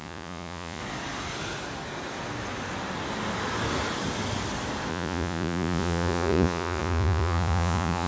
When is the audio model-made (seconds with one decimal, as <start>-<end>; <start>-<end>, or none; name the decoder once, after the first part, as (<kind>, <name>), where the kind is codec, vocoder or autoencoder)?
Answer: 0.0-0.8 (vocoder, Vocos); 4.9-8.1